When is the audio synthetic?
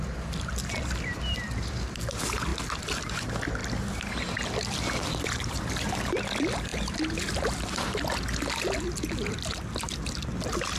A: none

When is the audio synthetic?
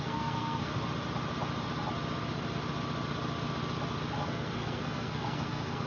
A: 0.0-0.7; 4.2-5.9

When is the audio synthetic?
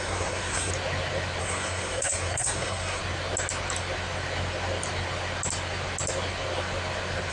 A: 0.0-0.7; 1.4-3.0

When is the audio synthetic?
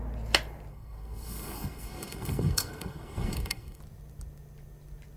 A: 0.7-3.8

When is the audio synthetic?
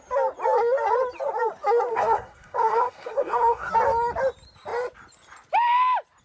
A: 1.9-3.7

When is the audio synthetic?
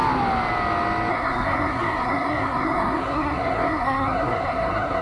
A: 1.1-5.0